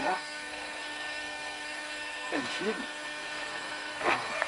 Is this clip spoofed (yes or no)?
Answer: yes